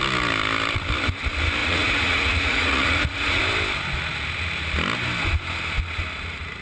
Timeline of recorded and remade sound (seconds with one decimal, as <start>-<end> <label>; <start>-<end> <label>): 0.0-1.6 recorded; 1.6-3.4 remade; 3.4-6.6 recorded